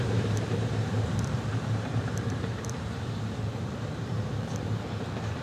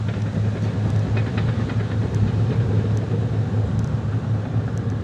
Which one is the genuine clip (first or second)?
second